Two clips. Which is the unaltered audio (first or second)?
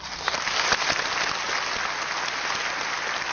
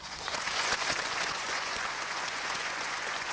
first